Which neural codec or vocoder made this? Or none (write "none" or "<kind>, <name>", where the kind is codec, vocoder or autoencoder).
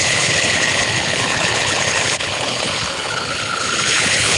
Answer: codec, HILCodec